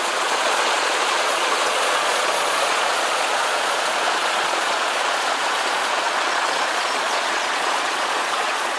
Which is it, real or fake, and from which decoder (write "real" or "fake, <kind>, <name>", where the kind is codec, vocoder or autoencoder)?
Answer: fake, vocoder, Vocos